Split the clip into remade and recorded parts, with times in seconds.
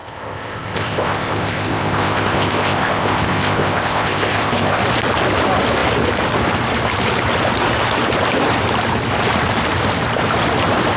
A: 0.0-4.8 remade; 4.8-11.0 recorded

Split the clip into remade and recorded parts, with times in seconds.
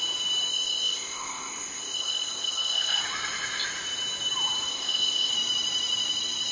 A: 0.0-0.5 recorded; 0.5-3.0 remade; 3.0-4.7 recorded; 4.7-5.3 remade; 5.3-6.5 recorded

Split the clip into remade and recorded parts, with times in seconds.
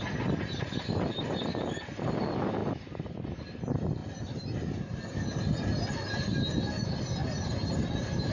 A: 0.0-8.3 recorded